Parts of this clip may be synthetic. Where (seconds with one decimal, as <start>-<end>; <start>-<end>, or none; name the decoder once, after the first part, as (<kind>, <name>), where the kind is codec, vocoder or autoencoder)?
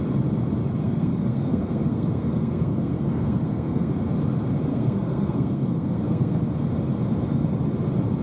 0.8-3.9 (codec, SNAC); 4.7-6.4